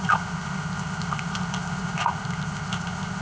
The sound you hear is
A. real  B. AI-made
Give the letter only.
B